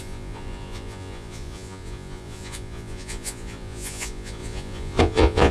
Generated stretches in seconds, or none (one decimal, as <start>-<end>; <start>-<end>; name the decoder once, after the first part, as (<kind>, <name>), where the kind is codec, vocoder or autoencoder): 0.0-5.5 (vocoder, Vocos)